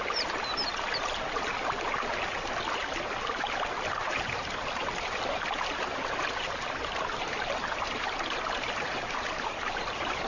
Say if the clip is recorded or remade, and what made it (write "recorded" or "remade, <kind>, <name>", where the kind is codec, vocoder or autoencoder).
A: recorded